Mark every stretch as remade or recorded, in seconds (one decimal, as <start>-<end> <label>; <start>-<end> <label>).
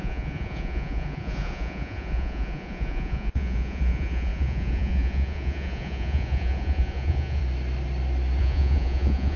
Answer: 0.0-7.4 remade; 7.4-8.4 recorded; 8.4-9.4 remade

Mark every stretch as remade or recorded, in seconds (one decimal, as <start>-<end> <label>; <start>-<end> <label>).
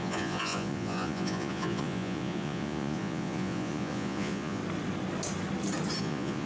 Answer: 0.0-4.6 remade; 4.6-6.0 recorded; 6.0-6.5 remade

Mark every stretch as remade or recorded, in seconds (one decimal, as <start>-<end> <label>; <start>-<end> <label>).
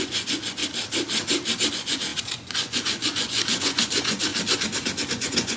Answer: 0.0-0.6 remade; 0.6-1.7 recorded; 1.7-4.3 remade; 4.3-5.1 recorded; 5.1-5.6 remade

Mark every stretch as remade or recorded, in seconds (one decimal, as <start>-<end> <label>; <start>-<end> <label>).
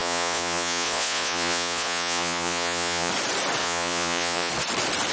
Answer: 0.0-3.1 remade; 3.1-3.6 recorded; 3.6-4.5 remade; 4.5-5.1 recorded